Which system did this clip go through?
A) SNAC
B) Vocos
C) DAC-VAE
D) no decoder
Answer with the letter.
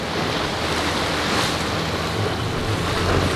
D